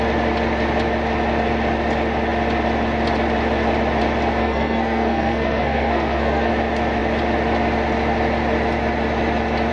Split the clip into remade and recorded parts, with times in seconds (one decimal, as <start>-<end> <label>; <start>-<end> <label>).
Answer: 0.0-4.4 recorded; 4.4-6.5 remade; 6.5-9.7 recorded